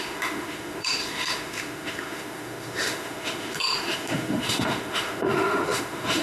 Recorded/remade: remade